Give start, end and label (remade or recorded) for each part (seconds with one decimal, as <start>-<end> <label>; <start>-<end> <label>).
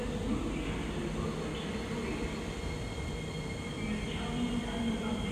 0.0-5.3 recorded